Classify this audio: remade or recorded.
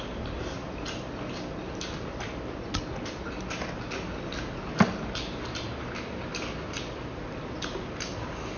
recorded